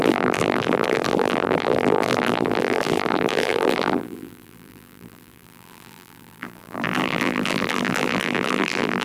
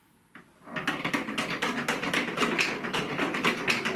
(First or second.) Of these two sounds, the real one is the second